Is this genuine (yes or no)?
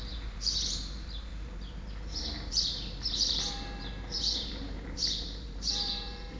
no